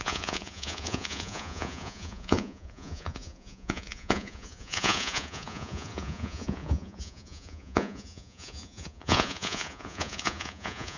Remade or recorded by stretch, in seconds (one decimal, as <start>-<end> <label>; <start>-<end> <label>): 0.0-11.0 remade